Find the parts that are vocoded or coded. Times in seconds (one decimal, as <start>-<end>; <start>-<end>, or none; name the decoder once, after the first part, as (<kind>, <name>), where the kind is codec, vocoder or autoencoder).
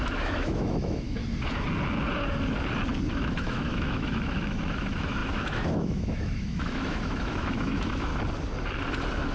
0.0-1.2 (autoencoder, DAC-VAE); 3.1-8.1